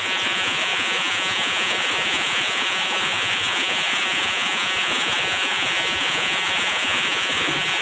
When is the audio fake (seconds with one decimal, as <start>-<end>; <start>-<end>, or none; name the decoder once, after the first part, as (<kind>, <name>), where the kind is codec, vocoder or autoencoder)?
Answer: 0.0-7.8 (vocoder, Vocos)